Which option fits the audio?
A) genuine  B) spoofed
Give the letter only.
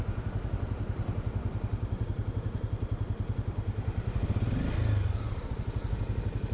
A